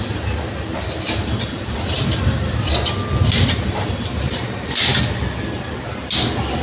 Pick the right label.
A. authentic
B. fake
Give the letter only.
A